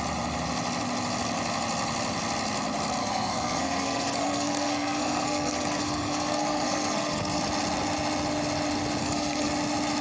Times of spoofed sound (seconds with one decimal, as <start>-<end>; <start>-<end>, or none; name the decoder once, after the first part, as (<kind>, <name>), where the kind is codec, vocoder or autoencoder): 3.0-7.4 (codec, SNAC); 9.0-9.5